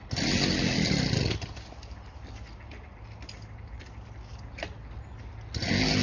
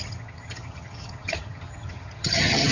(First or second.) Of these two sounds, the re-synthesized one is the second